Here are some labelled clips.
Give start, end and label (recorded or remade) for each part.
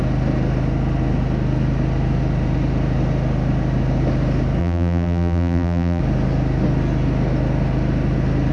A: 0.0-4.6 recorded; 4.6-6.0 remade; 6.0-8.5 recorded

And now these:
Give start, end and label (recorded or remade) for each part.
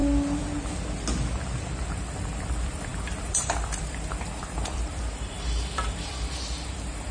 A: 0.0-1.8 recorded; 1.8-7.1 remade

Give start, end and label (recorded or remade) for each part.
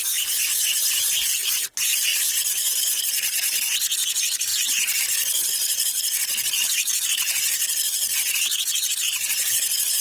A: 0.0-2.1 recorded; 2.1-3.0 remade; 3.0-10.0 recorded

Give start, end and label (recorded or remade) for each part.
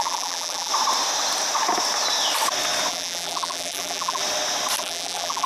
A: 0.0-0.7 remade; 0.7-2.9 recorded; 2.9-4.2 remade; 4.2-4.8 recorded; 4.8-5.5 remade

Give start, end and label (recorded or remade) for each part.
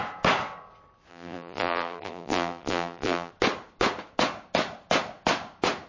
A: 0.0-1.1 recorded; 1.1-3.3 remade; 3.3-5.9 recorded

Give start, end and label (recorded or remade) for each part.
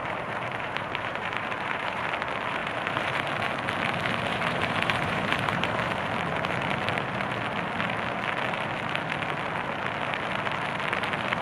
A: 0.0-2.1 remade; 2.1-2.6 recorded; 2.6-3.3 remade; 3.3-4.3 recorded; 4.3-6.0 remade; 6.0-11.4 recorded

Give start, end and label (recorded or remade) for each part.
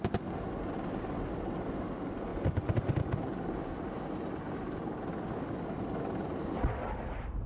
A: 0.0-7.5 recorded